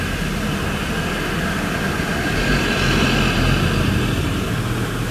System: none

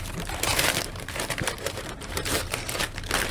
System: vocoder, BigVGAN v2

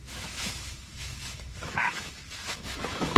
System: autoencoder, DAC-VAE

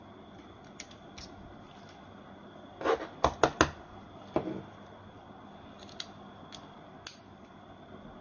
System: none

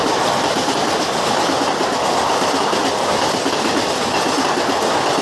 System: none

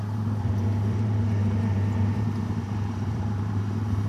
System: vocoder, BigVGAN v2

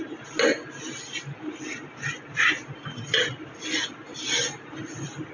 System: none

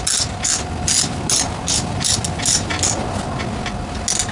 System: none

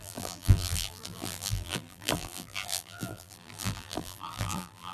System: vocoder, BigVGAN v2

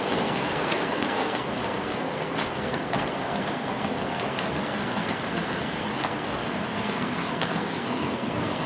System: codec, SNAC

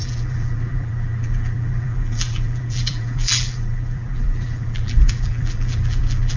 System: vocoder, BigVGAN v2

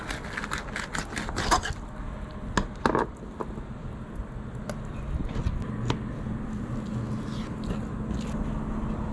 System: none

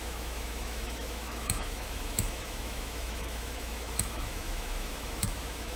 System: autoencoder, DAC-VAE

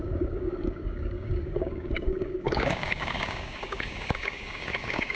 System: codec, DAC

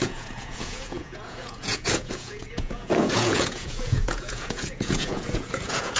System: vocoder, Vocos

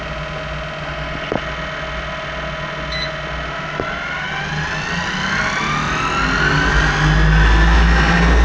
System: none